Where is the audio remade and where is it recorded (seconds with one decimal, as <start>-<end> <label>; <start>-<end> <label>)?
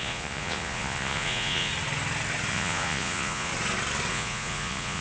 0.0-1.7 remade; 1.7-2.5 recorded; 2.5-3.5 remade; 3.5-4.1 recorded; 4.1-5.0 remade